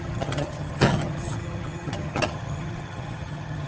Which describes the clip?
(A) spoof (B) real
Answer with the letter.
A